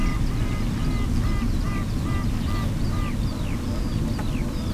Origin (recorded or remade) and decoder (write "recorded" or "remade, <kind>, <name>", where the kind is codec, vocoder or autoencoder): recorded